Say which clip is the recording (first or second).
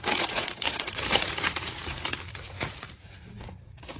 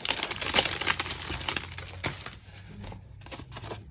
second